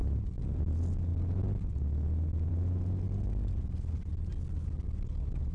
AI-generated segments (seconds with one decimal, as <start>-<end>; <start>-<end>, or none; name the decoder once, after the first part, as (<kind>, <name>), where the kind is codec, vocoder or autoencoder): 0.0-0.6 (vocoder, BigVGAN v2)